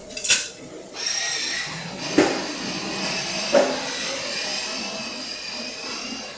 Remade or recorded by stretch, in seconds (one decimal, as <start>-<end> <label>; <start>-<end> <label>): 0.0-6.4 recorded